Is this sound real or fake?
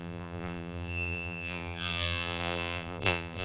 fake